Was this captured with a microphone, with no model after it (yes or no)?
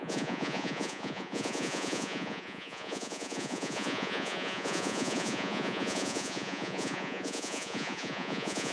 no